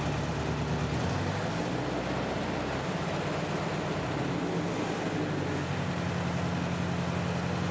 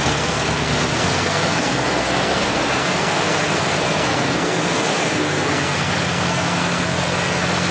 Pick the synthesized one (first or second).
second